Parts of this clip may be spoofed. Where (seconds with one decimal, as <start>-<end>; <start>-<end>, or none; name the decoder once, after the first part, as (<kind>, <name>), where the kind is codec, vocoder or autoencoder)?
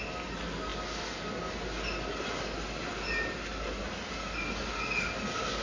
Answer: none